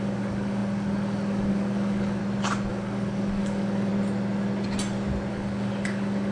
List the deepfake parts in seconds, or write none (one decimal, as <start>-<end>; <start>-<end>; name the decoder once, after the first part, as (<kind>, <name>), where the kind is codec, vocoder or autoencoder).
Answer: 0.0-2.2 (codec, DAC); 2.7-3.9; 5.3-6.3